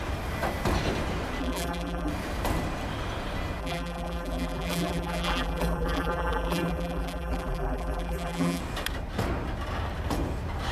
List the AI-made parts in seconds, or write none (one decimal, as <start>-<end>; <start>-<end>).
1.4-2.1; 3.6-8.6